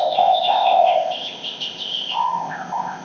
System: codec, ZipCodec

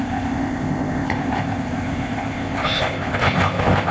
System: codec, ZipCodec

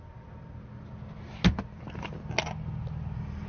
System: none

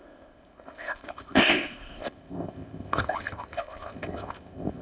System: codec, ZipCodec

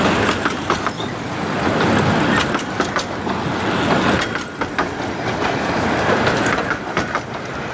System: none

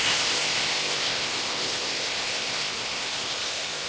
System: codec, ZipCodec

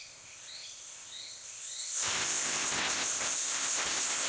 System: codec, ZipCodec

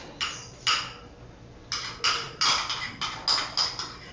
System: none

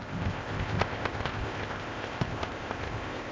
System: codec, ZipCodec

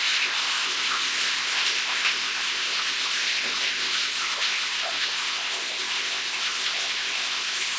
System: codec, ZipCodec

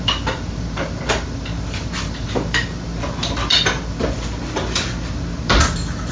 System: none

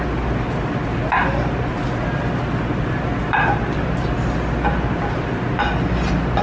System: none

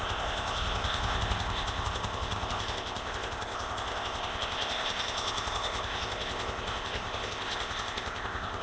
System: codec, ZipCodec